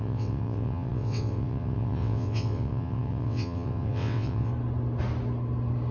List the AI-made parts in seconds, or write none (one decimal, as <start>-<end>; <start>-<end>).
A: 0.0-4.5